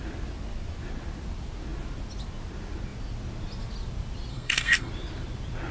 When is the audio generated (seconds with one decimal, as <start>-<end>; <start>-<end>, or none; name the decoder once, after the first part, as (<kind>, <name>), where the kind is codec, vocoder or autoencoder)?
4.3-4.9 (codec, SNAC)